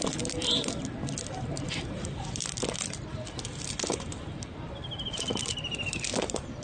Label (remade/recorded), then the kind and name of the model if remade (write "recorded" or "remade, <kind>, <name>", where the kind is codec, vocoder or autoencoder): remade, vocoder, BigVGAN v2